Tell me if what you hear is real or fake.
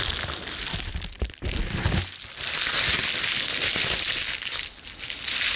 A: real